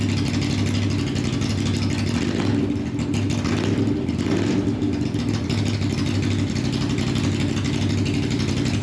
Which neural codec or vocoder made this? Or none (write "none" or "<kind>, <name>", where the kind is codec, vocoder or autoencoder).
none